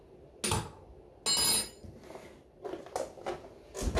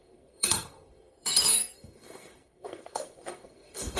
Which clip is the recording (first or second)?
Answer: first